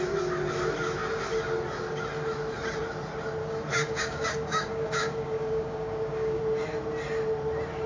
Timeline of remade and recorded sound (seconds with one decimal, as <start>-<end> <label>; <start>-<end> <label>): 0.0-3.4 recorded; 3.4-6.4 remade; 6.4-7.9 recorded